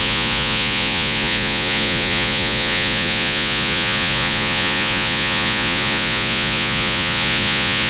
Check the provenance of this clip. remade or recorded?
remade